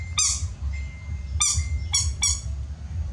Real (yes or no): yes